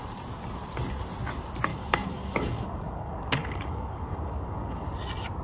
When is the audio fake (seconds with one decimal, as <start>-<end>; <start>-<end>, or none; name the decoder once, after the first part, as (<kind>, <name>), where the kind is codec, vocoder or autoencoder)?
1.7-4.9 (codec, DAC)